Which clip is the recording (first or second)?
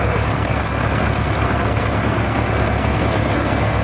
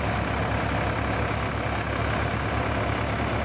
second